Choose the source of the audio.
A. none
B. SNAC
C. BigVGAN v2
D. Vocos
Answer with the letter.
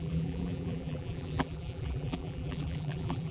C